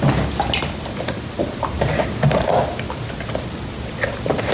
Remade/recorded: remade